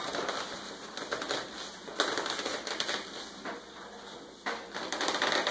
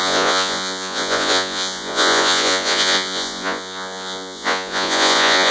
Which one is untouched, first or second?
first